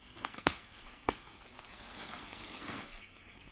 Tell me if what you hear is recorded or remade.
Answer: remade